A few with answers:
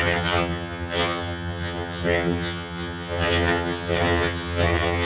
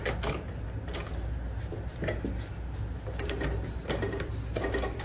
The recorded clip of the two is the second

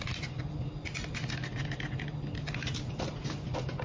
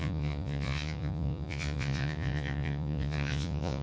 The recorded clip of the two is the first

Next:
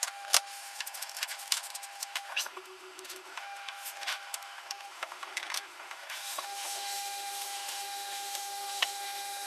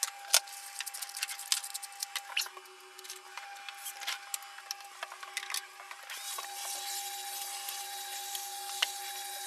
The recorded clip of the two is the second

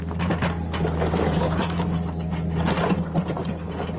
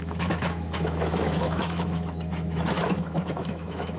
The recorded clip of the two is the first